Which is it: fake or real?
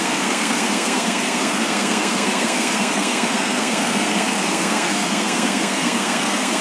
fake